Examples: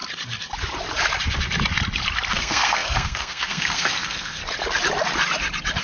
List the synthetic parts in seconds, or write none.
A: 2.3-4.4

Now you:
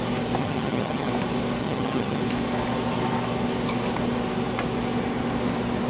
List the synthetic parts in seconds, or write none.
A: 0.4-1.1; 1.6-2.2

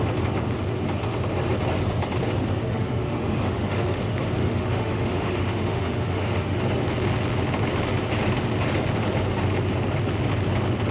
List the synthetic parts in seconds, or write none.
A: 2.7-4.0; 4.4-6.6

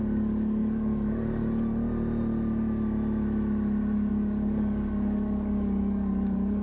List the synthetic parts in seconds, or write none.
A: 0.0-1.4; 4.1-6.6

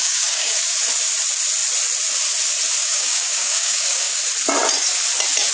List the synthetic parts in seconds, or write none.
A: 0.0-0.8; 2.8-4.2

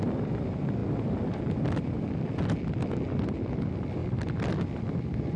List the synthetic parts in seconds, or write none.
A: none